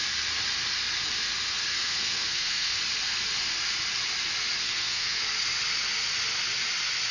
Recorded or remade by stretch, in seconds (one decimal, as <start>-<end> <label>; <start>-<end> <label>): 0.0-1.7 recorded; 1.7-2.8 remade; 2.8-4.6 recorded; 4.6-5.2 remade; 5.2-7.1 recorded